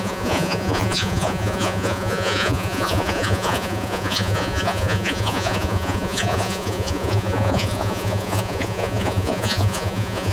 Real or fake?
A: fake